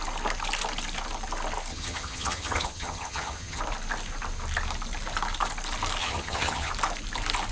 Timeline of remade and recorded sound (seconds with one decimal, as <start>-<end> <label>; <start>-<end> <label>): 0.0-1.7 recorded; 1.7-3.6 remade; 3.6-6.0 recorded; 6.0-6.7 remade; 6.7-7.5 recorded